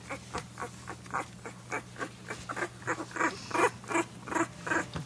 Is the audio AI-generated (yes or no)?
no